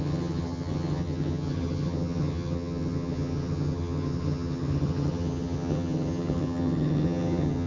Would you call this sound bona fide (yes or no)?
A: no